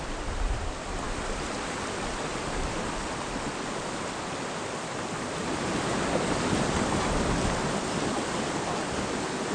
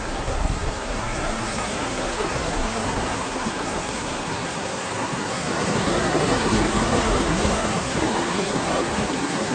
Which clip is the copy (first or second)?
second